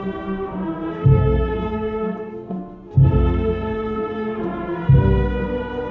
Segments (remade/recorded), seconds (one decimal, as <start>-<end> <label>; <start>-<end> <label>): 0.0-0.9 recorded; 0.9-4.4 remade; 4.4-5.9 recorded